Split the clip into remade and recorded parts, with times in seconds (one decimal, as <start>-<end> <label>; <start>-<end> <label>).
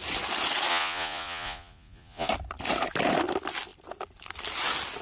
0.0-0.7 recorded; 0.7-2.3 remade; 2.3-5.0 recorded